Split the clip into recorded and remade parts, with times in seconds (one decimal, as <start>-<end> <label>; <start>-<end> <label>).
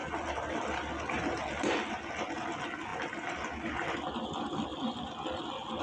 0.0-5.8 recorded